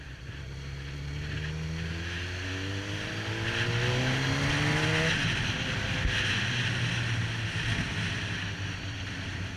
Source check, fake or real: real